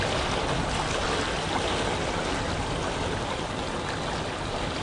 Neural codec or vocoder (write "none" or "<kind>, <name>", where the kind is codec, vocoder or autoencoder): none